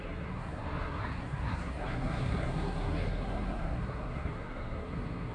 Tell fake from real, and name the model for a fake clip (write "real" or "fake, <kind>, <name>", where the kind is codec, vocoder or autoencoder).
fake, codec, SNAC